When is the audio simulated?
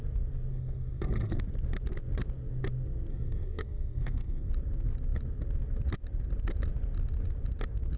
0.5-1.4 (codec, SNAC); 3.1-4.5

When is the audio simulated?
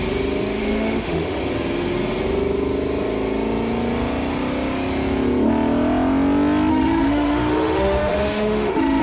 0.6-1.4 (autoencoder, DAC-VAE); 6.7-9.0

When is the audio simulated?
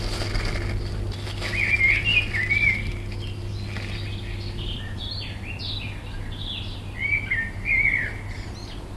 none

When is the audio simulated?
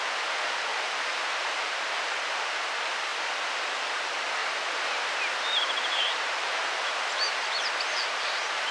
0.7-1.6 (vocoder, BigVGAN v2); 4.4-6.9